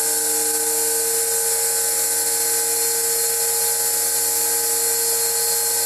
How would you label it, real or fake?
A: real